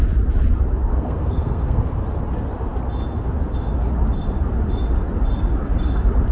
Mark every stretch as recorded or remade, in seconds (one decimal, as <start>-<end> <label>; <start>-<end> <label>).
0.0-0.9 recorded; 0.9-1.8 remade; 1.8-6.3 recorded